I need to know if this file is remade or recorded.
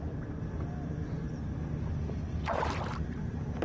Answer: recorded